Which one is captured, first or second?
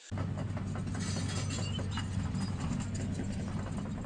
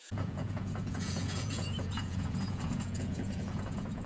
first